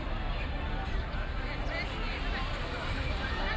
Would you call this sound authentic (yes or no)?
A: yes